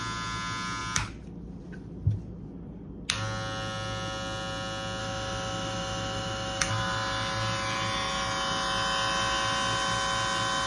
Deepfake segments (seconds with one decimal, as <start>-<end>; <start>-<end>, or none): 5.0-6.7